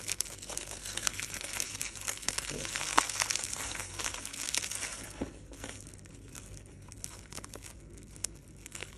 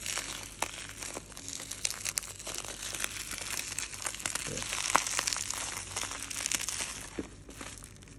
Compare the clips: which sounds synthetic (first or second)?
first